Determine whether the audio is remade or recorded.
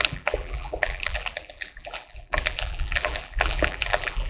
remade